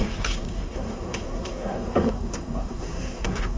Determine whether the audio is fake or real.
fake